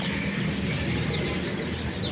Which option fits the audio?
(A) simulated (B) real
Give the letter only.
B